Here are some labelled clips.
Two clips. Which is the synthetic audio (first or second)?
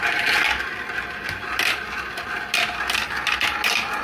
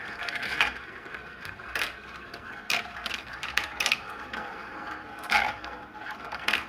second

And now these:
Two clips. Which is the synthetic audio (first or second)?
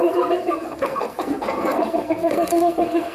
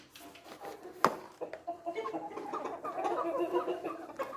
first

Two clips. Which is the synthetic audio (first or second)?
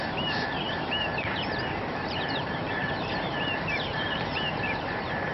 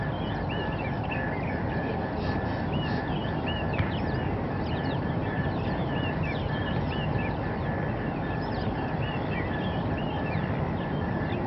first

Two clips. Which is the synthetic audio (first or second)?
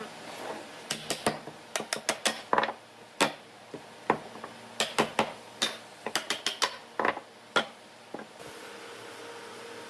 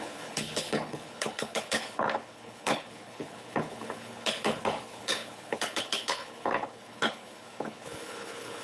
second